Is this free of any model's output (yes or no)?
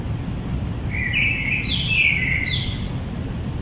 yes